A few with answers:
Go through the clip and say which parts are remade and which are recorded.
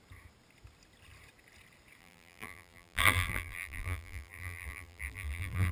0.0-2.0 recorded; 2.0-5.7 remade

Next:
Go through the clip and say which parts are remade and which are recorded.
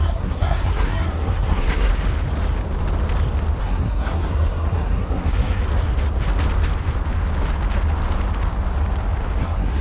0.0-1.9 remade; 1.9-3.6 recorded; 3.6-5.6 remade; 5.6-9.4 recorded; 9.4-9.8 remade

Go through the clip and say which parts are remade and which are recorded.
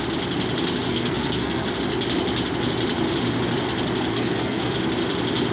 0.0-0.9 recorded; 0.9-1.7 remade; 1.7-4.1 recorded; 4.1-4.6 remade; 4.6-5.5 recorded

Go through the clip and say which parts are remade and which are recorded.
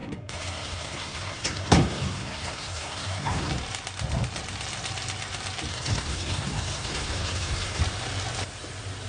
0.0-3.5 remade; 3.5-5.7 recorded; 5.7-7.8 remade; 7.8-9.1 recorded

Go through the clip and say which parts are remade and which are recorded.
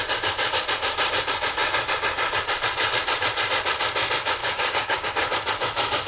0.0-4.4 recorded; 4.4-5.1 remade; 5.1-6.1 recorded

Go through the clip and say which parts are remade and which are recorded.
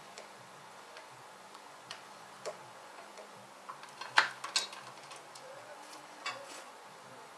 0.0-3.4 remade; 3.4-5.3 recorded; 5.3-7.4 remade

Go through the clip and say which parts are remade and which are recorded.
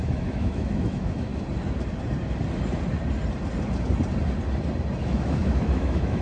0.0-1.3 remade; 1.3-5.0 recorded; 5.0-6.2 remade